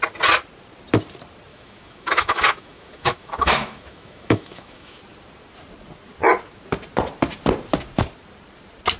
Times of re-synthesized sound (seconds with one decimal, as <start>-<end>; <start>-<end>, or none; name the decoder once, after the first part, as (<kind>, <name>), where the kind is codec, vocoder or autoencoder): 1.5-5.0 (autoencoder, DAC-VAE)